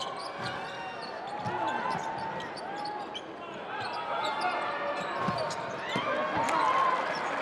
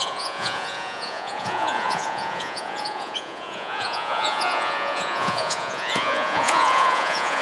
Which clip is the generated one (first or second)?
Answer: second